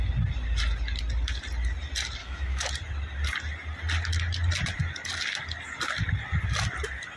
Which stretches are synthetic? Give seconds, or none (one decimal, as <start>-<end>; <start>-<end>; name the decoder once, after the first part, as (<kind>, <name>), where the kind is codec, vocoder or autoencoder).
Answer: 2.2-2.7 (autoencoder, DAC-VAE)